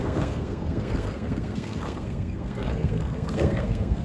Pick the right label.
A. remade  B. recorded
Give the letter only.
A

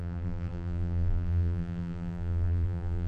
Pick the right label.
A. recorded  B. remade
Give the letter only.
B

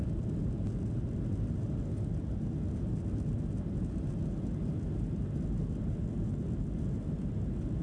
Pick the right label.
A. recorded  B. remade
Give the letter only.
A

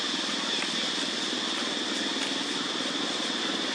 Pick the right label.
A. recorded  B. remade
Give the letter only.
A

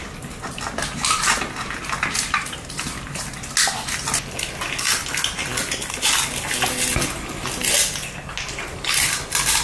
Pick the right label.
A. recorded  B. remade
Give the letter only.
A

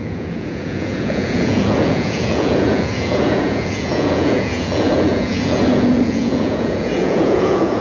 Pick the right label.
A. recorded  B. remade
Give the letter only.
B